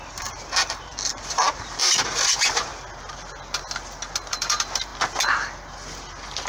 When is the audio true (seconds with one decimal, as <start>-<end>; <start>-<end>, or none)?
2.7-4.3; 4.9-6.5

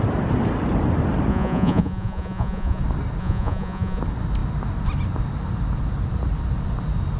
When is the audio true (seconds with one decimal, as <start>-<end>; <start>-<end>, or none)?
0.0-1.3; 2.8-3.2; 4.0-7.2

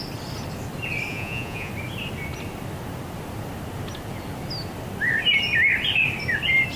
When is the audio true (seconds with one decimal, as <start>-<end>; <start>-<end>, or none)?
0.0-1.1; 1.7-6.8

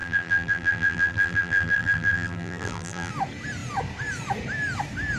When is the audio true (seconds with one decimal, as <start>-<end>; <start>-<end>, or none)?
3.1-5.2

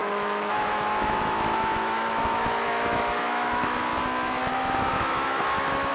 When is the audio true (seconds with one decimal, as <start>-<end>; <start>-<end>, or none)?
3.9-4.5

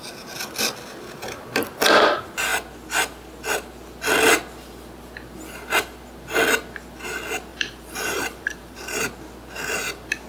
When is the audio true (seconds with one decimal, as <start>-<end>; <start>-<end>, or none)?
0.0-7.5; 9.0-10.3

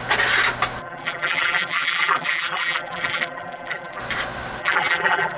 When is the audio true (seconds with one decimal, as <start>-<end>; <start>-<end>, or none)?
0.0-0.8; 4.0-4.6

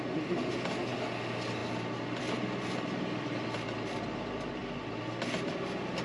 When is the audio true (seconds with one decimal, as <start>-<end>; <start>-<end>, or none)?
0.0-6.0